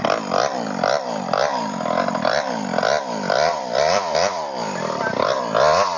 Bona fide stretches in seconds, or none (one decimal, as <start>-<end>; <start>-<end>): none